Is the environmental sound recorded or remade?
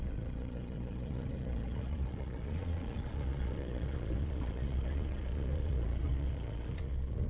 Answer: remade